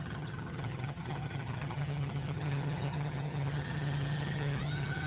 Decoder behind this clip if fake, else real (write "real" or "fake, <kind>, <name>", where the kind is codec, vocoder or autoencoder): fake, vocoder, HiFi-GAN